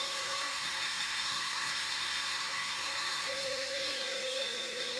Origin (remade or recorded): remade